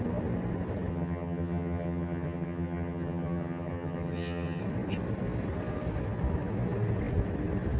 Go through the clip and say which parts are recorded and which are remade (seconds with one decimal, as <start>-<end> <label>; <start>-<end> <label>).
0.0-0.9 recorded; 0.9-4.6 remade; 4.6-7.8 recorded

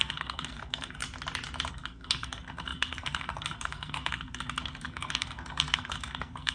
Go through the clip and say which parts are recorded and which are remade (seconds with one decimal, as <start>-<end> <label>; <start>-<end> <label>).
0.0-1.0 remade; 1.0-1.7 recorded; 1.7-6.5 remade